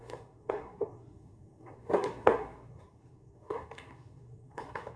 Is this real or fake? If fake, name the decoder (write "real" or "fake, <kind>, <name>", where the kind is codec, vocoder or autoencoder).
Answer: fake, codec, SNAC